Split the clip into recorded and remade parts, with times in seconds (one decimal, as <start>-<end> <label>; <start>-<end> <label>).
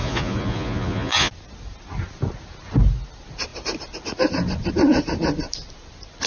0.0-1.3 remade; 1.3-6.3 recorded